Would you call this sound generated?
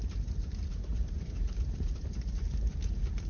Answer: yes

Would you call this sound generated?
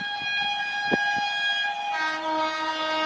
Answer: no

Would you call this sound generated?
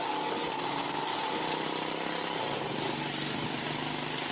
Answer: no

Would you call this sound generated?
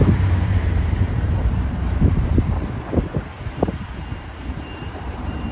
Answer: yes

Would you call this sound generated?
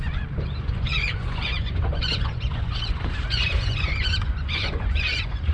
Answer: yes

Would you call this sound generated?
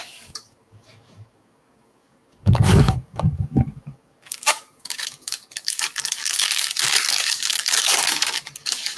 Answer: yes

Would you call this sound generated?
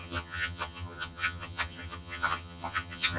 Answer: yes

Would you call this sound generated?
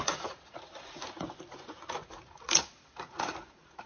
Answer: yes